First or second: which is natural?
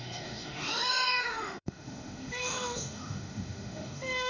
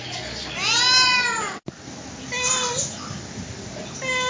second